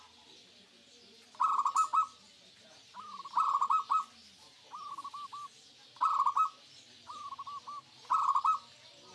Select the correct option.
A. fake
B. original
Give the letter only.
B